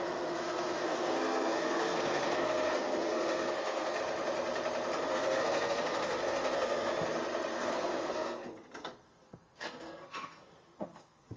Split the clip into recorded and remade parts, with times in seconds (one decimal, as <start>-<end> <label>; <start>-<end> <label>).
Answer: 0.0-4.0 remade; 4.0-5.1 recorded; 5.1-6.9 remade; 6.9-7.5 recorded; 7.5-11.4 remade